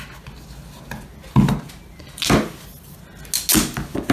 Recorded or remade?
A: recorded